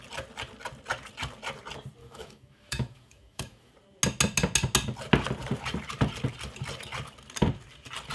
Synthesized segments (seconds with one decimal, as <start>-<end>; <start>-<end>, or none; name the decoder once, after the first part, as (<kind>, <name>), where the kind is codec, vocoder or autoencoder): 2.0-3.7 (autoencoder, DAC-VAE)